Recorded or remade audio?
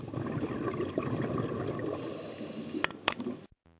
recorded